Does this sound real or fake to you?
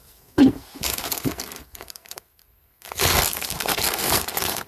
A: fake